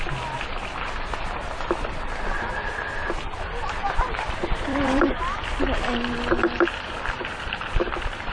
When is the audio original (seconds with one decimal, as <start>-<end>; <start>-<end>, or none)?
0.0-3.8; 5.0-6.4

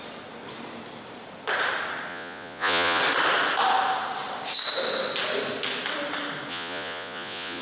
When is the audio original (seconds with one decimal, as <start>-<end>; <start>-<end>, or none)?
0.0-2.1; 3.0-6.5